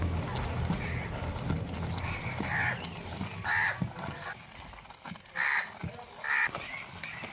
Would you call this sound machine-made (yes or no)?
no